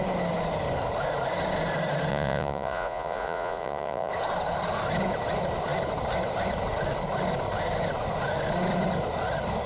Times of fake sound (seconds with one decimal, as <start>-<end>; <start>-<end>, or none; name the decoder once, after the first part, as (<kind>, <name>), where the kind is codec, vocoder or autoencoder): 2.1-4.1 (vocoder, Vocos)

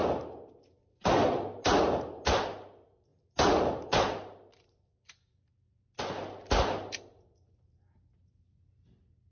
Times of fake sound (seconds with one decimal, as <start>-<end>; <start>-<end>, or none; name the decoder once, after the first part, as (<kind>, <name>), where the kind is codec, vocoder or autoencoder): none

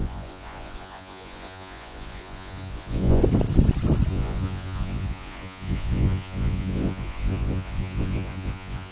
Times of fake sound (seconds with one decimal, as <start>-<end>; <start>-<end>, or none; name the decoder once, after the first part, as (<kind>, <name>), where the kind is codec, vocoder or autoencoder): 0.0-3.2 (vocoder, Vocos); 4.1-8.9

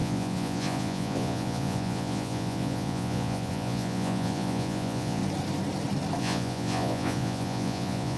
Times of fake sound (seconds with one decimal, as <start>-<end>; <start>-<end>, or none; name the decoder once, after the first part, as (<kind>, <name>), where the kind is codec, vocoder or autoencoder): 0.0-5.2 (vocoder, Vocos); 6.2-8.2